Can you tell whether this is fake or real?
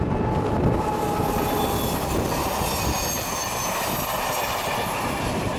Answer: real